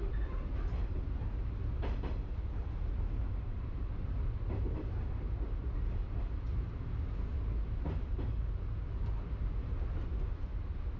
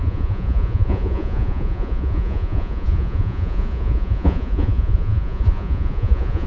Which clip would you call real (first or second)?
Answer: first